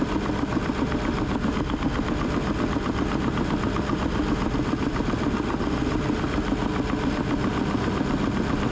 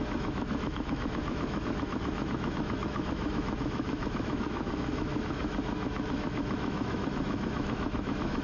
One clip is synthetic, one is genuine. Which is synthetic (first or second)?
second